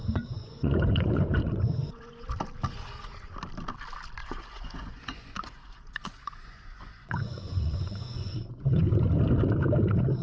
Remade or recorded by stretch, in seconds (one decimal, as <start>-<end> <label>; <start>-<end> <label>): 0.0-2.3 remade; 2.3-4.2 recorded; 4.2-8.9 remade; 8.9-10.2 recorded